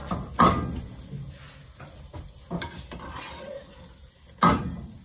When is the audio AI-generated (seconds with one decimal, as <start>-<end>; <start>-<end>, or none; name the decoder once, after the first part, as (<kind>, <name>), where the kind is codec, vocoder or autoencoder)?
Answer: none